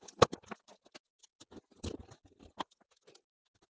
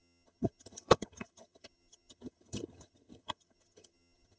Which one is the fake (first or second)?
second